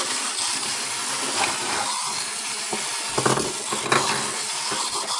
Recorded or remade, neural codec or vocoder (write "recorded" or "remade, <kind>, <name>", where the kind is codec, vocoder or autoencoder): recorded